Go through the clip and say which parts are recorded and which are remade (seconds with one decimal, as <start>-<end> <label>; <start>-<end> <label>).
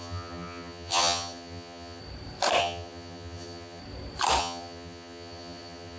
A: 0.0-2.0 remade; 2.0-2.6 recorded; 2.6-3.8 remade; 3.8-4.4 recorded; 4.4-6.0 remade